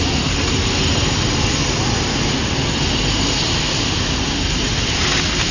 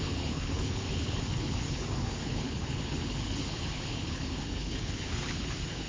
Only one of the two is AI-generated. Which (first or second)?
second